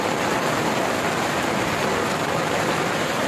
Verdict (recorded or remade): recorded